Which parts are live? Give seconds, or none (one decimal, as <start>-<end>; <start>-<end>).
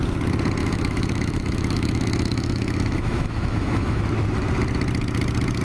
0.0-0.6; 4.0-5.6